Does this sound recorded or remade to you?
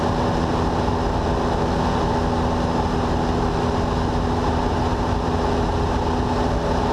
recorded